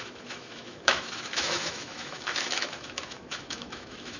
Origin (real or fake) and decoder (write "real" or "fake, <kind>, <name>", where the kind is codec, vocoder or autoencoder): fake, autoencoder, DAC-VAE